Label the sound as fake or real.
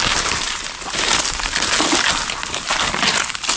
real